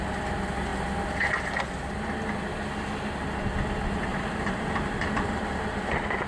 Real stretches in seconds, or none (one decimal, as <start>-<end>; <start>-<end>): 0.0-4.1